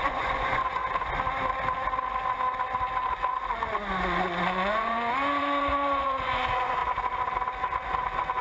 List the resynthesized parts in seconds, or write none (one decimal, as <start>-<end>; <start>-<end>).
0.0-0.8; 4.4-6.8